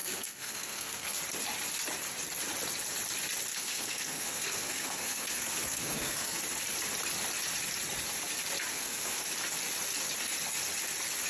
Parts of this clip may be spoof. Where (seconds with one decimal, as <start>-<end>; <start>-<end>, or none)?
0.0-1.2; 3.5-6.4; 8.7-9.2